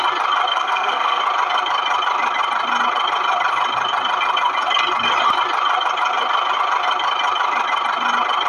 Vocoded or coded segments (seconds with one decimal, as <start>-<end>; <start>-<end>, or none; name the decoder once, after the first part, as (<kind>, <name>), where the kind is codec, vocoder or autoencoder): 0.5-1.2 (codec, SNAC)